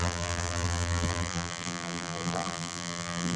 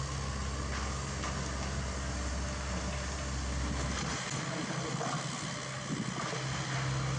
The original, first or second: second